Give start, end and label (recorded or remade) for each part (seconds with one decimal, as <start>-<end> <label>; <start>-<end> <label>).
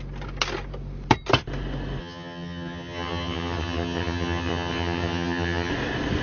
0.0-2.0 recorded; 2.0-5.7 remade; 5.7-6.2 recorded